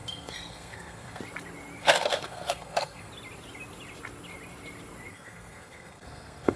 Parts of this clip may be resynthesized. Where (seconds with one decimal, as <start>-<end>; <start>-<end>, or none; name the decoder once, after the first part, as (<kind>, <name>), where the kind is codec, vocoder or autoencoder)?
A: 0.0-1.2 (codec, SNAC); 1.8-3.1; 5.1-6.6